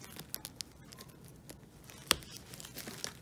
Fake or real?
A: real